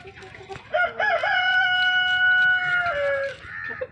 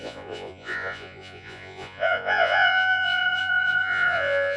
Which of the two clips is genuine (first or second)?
first